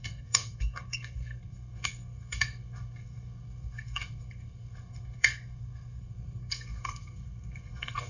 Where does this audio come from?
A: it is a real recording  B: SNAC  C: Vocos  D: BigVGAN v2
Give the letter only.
B